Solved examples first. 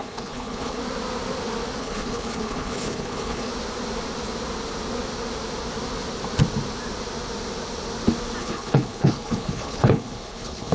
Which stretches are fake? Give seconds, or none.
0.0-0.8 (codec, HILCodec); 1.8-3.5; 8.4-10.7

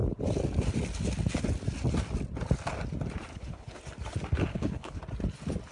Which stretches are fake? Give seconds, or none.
3.3-3.8 (codec, HILCodec); 4.5-5.0

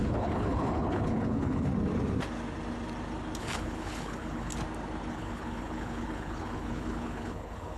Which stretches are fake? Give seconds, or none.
0.0-1.7 (codec, HILCodec); 3.4-4.5; 5.1-7.8